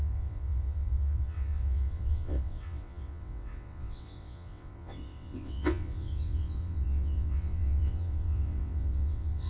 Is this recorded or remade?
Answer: remade